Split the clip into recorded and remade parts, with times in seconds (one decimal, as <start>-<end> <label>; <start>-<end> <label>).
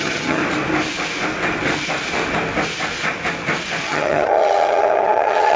0.0-0.4 remade; 0.4-3.8 recorded; 3.8-5.6 remade